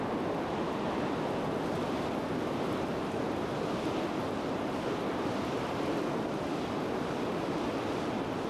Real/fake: real